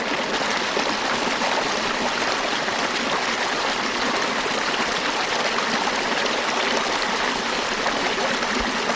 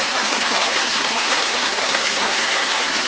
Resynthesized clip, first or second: second